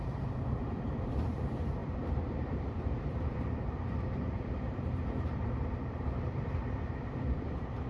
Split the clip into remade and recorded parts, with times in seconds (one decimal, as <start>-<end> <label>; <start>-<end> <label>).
0.0-7.9 remade